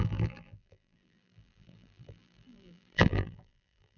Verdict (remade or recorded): remade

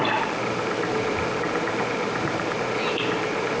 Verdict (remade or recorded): remade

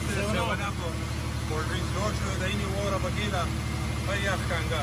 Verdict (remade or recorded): recorded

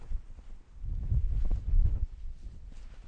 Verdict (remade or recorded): recorded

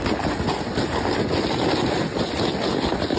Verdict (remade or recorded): recorded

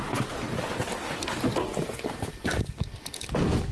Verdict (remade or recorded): recorded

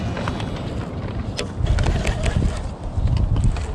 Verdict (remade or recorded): recorded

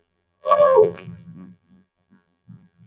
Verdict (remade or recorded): remade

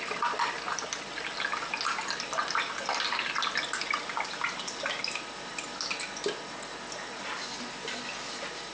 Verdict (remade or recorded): recorded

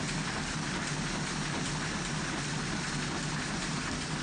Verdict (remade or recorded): recorded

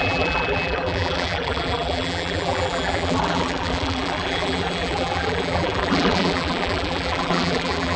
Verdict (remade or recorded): remade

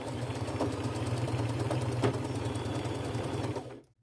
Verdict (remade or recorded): remade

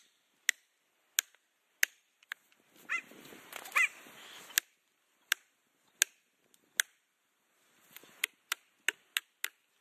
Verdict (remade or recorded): recorded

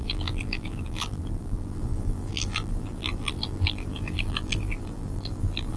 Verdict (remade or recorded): remade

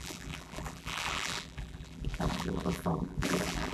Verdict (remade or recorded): remade